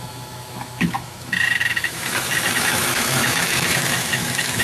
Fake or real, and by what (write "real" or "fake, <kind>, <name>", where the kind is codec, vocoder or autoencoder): fake, autoencoder, DAC-VAE